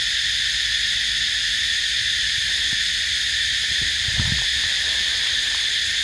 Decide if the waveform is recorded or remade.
recorded